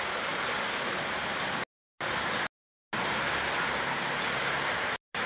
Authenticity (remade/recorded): recorded